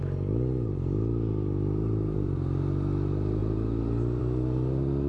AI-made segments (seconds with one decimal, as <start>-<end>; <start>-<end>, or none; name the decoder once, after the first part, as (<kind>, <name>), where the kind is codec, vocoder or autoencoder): none